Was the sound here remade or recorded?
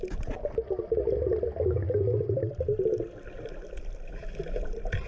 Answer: recorded